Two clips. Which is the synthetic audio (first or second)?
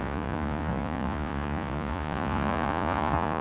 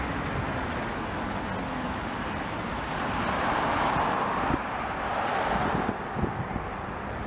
first